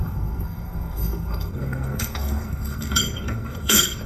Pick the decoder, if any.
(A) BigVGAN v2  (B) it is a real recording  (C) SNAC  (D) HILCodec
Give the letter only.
C